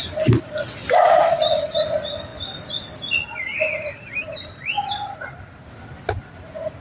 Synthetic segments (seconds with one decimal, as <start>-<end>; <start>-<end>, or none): none